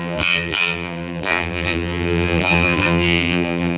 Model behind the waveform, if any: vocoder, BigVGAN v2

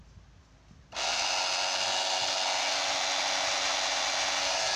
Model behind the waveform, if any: none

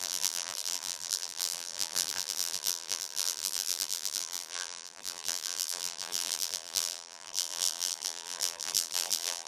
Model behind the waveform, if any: vocoder, BigVGAN v2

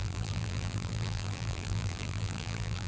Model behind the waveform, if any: vocoder, BigVGAN v2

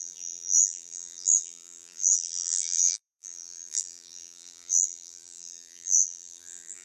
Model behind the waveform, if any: vocoder, BigVGAN v2